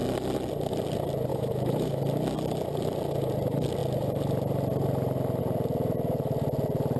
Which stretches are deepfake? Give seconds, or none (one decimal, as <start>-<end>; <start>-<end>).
1.3-2.0